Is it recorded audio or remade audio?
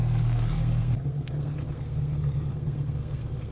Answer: remade